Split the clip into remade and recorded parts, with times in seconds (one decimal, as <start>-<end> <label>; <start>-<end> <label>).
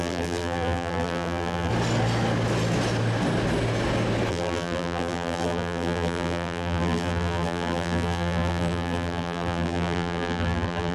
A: 0.0-1.7 remade; 1.7-4.3 recorded; 4.3-10.9 remade